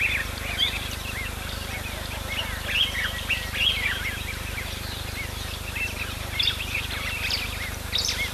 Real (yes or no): yes